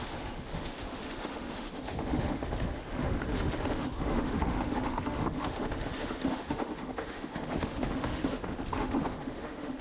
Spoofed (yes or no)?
yes